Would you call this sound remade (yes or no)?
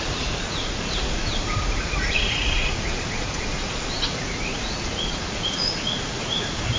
yes